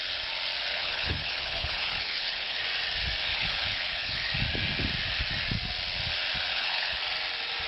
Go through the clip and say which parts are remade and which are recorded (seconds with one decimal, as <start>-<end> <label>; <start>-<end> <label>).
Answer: 0.0-0.7 recorded; 0.7-2.6 remade; 2.6-3.3 recorded; 3.3-4.3 remade; 4.3-6.5 recorded; 6.5-7.0 remade; 7.0-7.7 recorded